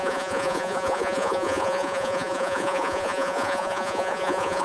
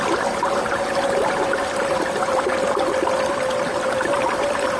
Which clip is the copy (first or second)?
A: first